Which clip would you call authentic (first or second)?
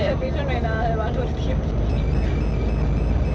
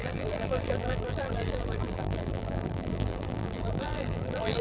first